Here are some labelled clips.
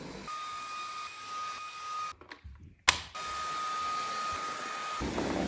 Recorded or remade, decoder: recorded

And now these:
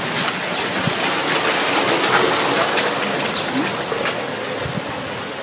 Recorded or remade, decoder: recorded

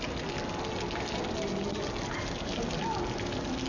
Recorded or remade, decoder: recorded